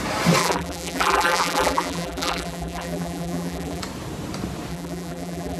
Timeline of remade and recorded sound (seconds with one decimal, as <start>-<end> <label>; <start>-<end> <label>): 0.0-0.4 recorded; 0.4-3.8 remade; 3.8-4.7 recorded; 4.7-5.6 remade